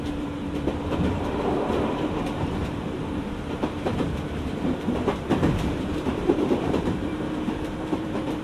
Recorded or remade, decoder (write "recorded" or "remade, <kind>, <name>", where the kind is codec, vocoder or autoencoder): remade, vocoder, BigVGAN v2